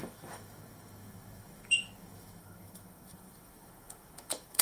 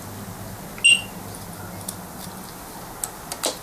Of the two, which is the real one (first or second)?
second